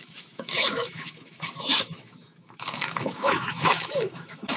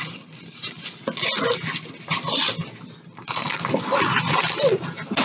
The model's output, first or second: first